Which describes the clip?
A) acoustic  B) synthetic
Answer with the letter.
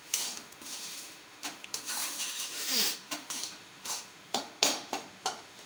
B